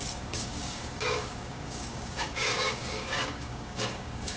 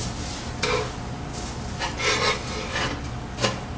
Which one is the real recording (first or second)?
second